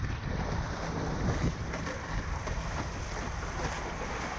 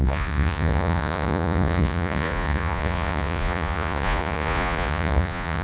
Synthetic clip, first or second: second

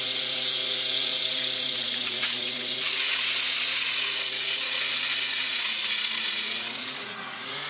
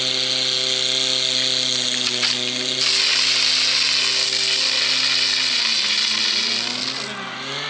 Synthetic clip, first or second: first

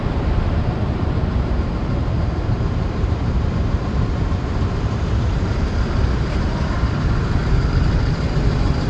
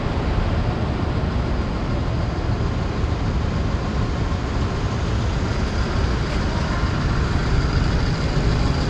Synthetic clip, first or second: first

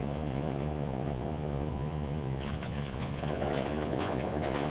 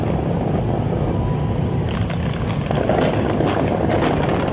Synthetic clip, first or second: first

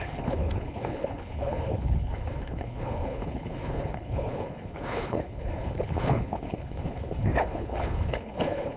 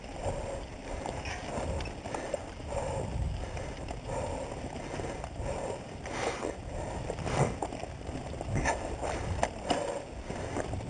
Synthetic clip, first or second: first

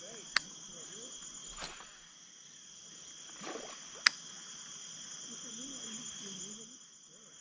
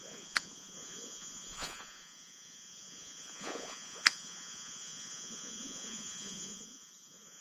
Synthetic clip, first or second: second